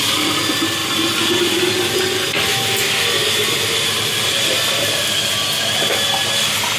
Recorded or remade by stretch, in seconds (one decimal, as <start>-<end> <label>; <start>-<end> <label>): 0.0-6.8 recorded